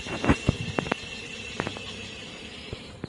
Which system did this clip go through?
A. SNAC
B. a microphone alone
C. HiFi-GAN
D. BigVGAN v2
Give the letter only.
B